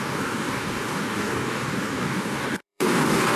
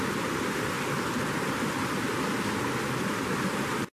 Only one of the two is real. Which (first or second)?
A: second